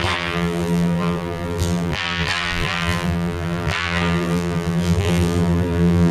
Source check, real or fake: fake